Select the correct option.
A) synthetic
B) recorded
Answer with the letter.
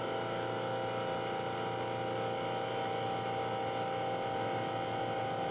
B